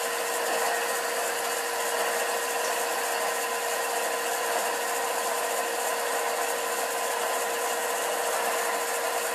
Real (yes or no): yes